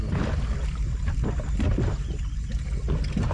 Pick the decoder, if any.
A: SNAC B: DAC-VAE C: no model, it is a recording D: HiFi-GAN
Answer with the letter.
C